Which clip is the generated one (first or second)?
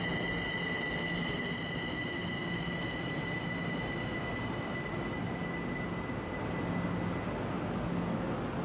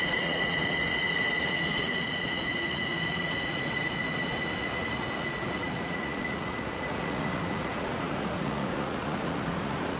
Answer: second